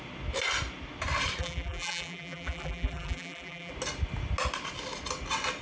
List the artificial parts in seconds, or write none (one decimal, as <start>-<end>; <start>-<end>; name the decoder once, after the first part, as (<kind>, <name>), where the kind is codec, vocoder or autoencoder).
1.4-3.7 (vocoder, BigVGAN v2)